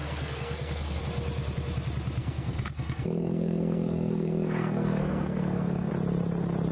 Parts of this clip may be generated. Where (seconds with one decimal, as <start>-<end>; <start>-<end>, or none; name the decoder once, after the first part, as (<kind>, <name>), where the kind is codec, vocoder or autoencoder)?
0.0-1.0 (codec, SNAC); 2.2-5.9